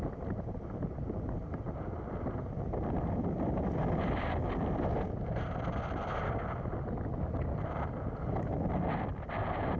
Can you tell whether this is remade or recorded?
recorded